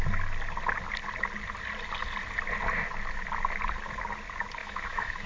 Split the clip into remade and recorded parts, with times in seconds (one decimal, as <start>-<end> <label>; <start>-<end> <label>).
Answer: 0.0-4.6 recorded; 4.6-5.3 remade